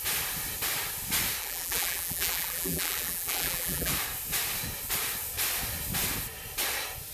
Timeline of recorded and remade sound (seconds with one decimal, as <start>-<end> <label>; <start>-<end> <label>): 0.0-1.4 recorded; 1.4-3.9 remade; 3.9-7.1 recorded